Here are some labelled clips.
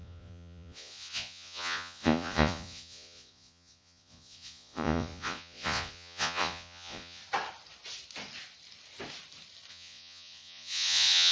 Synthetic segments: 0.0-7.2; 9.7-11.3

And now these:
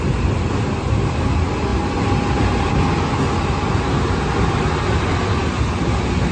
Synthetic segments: none

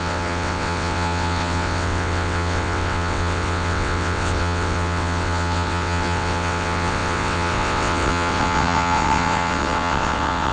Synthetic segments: 0.0-10.5